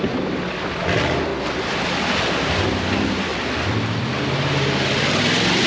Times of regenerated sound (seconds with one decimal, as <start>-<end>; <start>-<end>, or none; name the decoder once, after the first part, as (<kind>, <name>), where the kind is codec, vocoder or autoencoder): 0.0-1.3 (vocoder, BigVGAN v2); 2.5-5.7